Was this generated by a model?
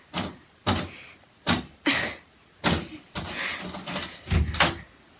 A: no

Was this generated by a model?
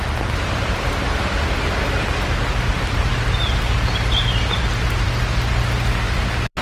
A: no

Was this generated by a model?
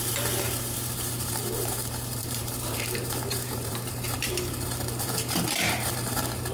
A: yes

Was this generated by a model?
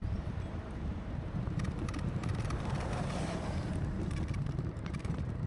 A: yes